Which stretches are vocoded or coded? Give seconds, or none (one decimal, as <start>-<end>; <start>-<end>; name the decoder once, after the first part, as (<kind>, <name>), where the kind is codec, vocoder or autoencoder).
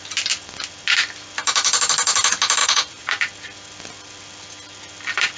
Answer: 2.6-3.1 (vocoder, Vocos)